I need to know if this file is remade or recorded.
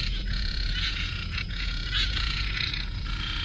remade